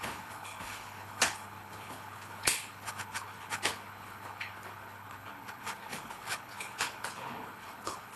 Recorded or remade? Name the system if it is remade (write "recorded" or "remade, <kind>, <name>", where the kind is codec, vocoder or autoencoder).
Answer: remade, codec, HILCodec